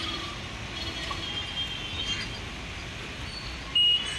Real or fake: real